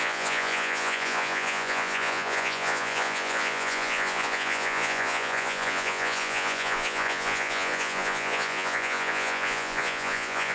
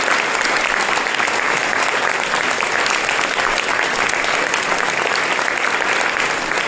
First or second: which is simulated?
first